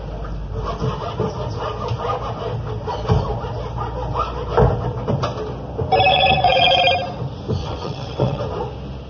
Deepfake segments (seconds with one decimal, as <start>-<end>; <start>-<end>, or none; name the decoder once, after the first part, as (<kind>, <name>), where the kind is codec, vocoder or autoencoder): 6.1-6.8 (vocoder, WaveNeXt); 7.6-8.4